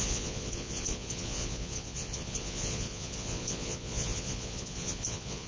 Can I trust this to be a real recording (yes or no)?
no